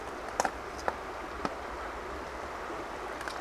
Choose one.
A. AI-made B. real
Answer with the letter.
B